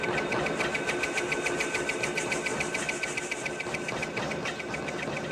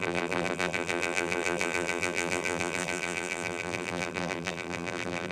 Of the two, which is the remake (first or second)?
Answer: second